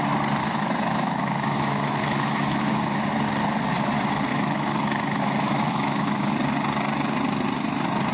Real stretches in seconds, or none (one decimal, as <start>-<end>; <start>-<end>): 0.0-0.4; 3.1-4.3; 6.3-8.1